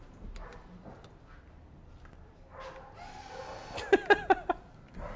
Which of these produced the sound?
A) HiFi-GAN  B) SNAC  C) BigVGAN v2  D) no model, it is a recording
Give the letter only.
D